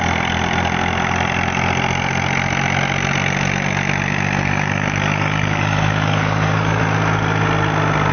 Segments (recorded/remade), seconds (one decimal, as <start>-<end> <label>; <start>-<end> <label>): 0.0-4.4 recorded; 4.4-6.8 remade; 6.8-8.1 recorded

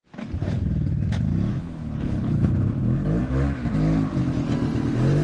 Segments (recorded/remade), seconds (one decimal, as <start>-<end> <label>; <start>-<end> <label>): 0.0-1.5 recorded; 1.5-2.5 remade; 2.5-5.2 recorded

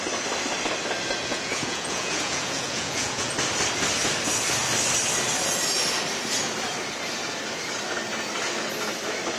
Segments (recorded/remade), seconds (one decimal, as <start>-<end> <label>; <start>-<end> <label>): 0.0-1.3 recorded; 1.3-3.3 remade; 3.3-9.4 recorded

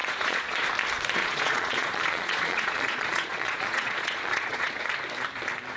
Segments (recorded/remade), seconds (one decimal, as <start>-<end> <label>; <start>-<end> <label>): 0.0-0.7 remade; 0.7-1.2 recorded; 1.2-4.7 remade; 4.7-5.8 recorded

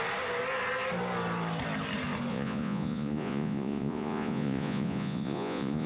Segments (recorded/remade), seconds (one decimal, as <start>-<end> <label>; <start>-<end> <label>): 0.0-2.3 recorded; 2.3-5.9 remade